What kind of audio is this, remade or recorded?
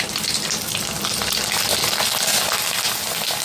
recorded